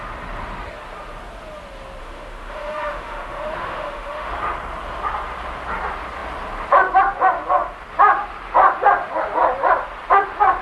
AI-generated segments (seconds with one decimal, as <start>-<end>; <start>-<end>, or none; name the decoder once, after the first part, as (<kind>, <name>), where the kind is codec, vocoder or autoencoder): 2.0-4.3 (autoencoder, DAC-VAE)